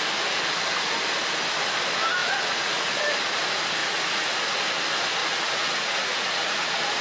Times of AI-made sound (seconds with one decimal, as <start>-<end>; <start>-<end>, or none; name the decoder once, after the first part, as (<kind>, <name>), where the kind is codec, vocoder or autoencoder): 2.2-3.0 (vocoder, Vocos); 3.8-4.6; 5.2-7.0